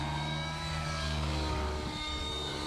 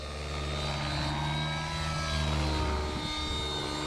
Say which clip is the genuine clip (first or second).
second